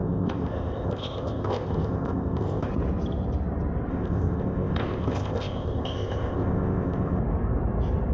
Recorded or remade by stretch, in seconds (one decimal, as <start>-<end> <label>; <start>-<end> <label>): 0.0-2.7 remade; 2.7-3.9 recorded; 3.9-7.2 remade; 7.2-8.1 recorded